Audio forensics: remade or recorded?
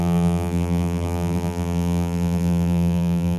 remade